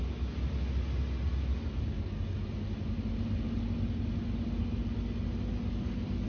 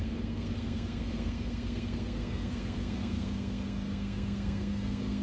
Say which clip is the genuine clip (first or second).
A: first